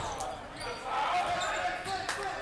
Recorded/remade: recorded